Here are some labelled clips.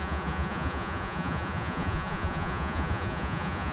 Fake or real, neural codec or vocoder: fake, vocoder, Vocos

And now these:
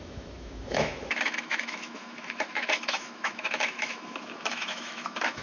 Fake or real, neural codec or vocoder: fake, autoencoder, DAC-VAE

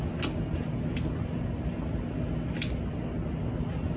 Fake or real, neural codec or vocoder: real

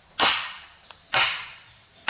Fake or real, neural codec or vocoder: real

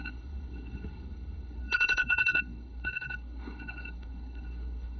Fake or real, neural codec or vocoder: fake, codec, SNAC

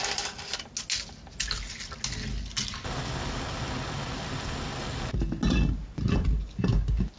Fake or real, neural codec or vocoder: real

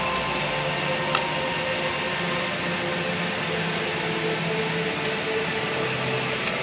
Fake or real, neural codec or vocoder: real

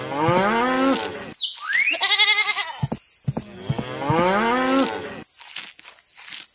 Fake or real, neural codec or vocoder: real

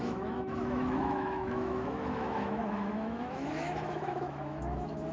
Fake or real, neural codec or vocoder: fake, autoencoder, DAC-VAE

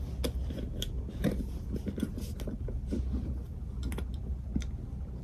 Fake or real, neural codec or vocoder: real